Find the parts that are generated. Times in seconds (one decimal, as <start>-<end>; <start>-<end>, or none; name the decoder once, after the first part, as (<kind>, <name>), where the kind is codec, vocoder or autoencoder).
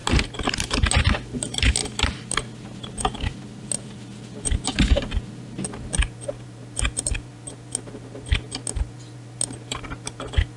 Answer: none